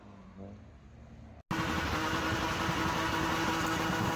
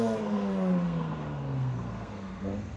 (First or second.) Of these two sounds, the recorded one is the first